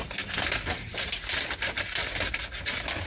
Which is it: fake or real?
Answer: real